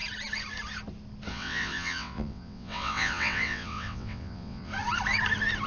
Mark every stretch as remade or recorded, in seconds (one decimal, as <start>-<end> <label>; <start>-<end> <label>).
0.0-1.3 recorded; 1.3-4.7 remade; 4.7-5.7 recorded